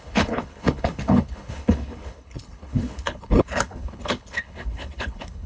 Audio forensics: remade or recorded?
remade